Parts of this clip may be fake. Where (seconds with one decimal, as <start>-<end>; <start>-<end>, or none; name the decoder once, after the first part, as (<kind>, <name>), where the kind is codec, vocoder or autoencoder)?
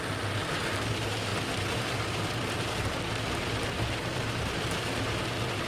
none